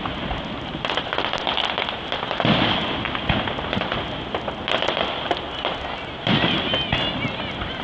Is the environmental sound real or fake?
real